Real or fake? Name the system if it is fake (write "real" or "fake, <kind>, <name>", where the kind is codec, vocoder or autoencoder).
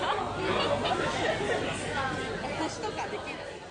real